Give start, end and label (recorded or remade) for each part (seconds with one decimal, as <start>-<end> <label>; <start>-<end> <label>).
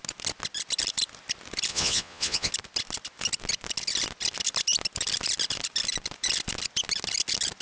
0.0-1.7 recorded; 1.7-2.5 remade; 2.5-7.6 recorded